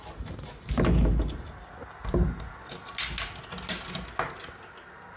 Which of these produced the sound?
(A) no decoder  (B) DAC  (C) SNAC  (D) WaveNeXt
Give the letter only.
A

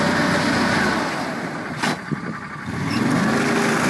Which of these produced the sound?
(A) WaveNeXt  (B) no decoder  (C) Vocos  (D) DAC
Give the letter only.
B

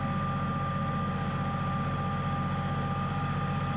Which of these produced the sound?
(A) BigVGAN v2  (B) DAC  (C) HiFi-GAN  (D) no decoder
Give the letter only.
D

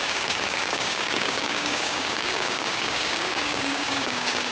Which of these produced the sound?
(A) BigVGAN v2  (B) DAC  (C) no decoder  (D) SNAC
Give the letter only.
B